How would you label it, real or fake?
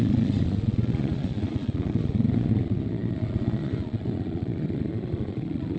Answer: fake